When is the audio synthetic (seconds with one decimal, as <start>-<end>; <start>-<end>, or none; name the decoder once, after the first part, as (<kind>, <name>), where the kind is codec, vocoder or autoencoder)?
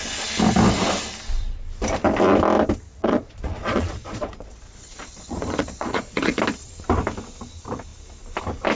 2.9-6.4 (vocoder, Vocos)